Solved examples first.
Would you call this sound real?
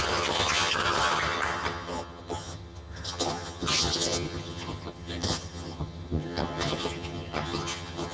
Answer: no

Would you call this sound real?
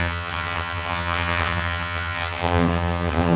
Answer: no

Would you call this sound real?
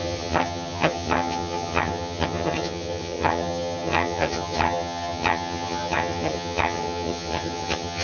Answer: no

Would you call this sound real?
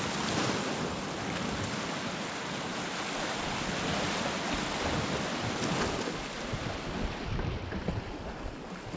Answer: yes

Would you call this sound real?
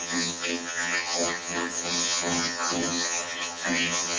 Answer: no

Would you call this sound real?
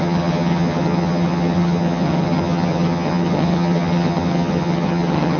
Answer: no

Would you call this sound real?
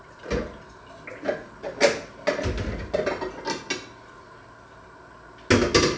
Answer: yes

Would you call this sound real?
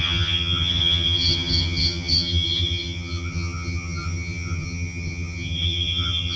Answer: no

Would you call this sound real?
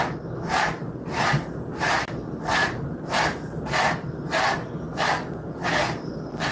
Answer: yes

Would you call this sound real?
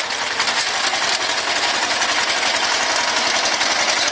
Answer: yes